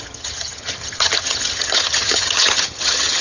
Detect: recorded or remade remade